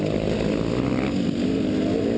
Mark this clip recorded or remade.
recorded